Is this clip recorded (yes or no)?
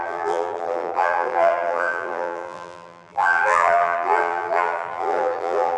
no